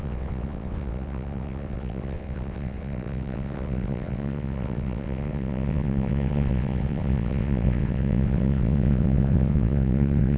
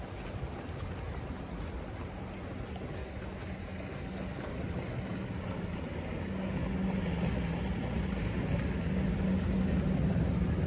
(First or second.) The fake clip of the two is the first